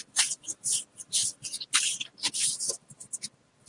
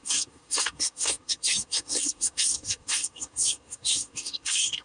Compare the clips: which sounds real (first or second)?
first